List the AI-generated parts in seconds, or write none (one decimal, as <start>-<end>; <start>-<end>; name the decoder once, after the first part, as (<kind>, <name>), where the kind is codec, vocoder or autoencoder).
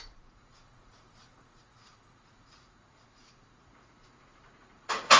0.0-5.2 (vocoder, Vocos)